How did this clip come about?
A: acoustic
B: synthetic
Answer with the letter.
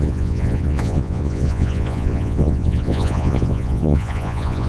B